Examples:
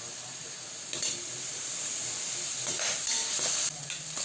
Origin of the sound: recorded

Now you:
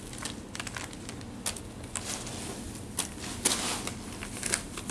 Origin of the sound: recorded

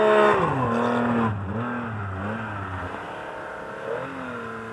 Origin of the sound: recorded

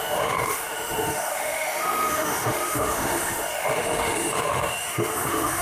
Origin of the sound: remade